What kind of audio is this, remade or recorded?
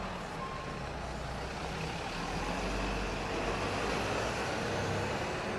recorded